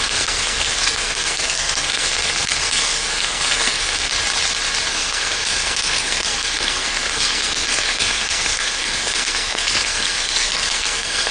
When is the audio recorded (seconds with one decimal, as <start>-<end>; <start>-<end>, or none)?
4.1-4.9